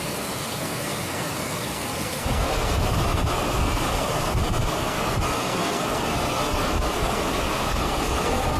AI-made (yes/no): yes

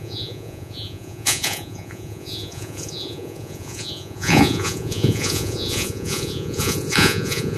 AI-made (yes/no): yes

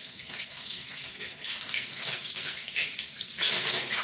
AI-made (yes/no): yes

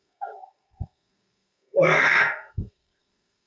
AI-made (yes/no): yes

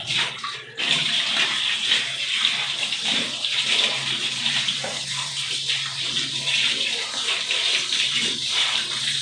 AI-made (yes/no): yes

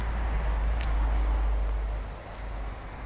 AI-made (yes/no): no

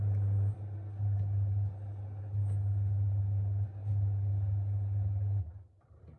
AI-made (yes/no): no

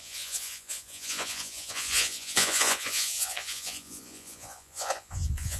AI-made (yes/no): yes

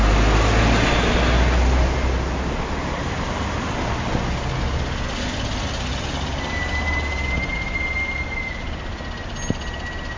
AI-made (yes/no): no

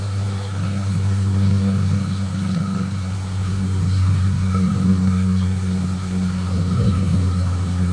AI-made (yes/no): yes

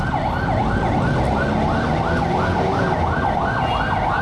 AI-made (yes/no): no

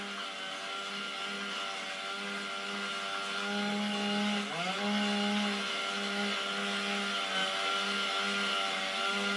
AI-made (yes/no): no